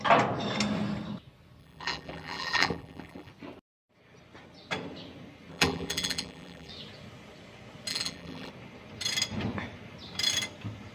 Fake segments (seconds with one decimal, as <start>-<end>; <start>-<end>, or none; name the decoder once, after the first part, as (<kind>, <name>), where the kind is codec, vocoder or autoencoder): 1.6-3.3 (vocoder, BigVGAN v2); 5.5-6.7; 7.9-8.5